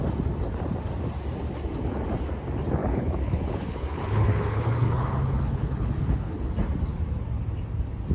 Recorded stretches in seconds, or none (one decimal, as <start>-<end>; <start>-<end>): 0.0-2.8; 6.5-8.1